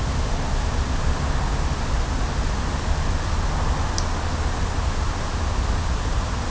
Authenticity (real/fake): real